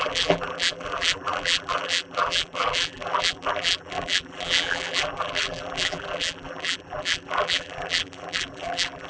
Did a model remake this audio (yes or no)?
yes